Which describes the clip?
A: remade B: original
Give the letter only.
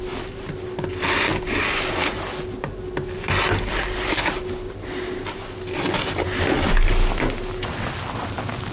B